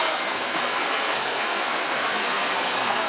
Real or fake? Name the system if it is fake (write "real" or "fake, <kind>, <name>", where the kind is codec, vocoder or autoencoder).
fake, codec, SNAC